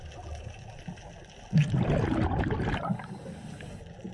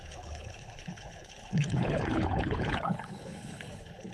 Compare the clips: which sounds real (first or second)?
first